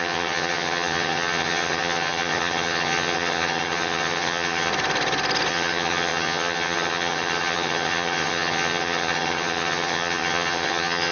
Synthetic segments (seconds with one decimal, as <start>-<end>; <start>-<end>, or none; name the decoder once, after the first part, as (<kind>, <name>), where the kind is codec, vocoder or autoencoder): 0.0-4.7 (vocoder, HiFi-GAN); 5.5-11.1